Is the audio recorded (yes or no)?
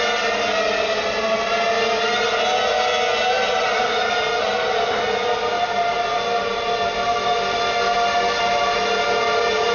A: yes